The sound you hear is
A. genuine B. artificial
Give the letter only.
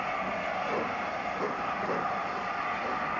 A